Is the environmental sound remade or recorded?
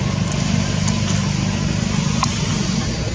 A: recorded